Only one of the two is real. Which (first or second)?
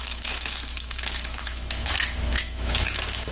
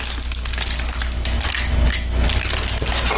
second